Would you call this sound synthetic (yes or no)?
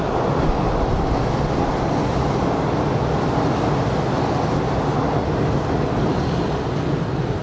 no